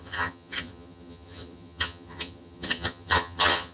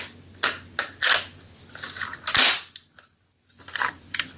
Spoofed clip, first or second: first